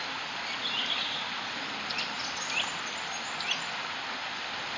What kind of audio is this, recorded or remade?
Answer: recorded